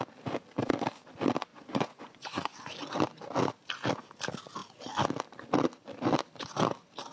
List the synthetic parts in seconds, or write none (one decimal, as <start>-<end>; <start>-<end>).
1.5-2.7